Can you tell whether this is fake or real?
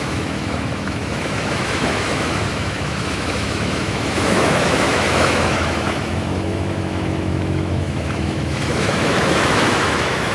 fake